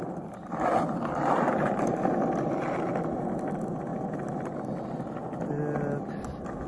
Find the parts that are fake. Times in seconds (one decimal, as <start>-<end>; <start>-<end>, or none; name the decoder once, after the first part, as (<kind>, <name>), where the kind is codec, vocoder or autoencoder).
none